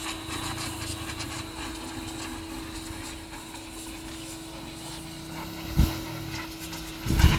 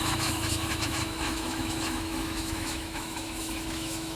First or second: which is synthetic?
second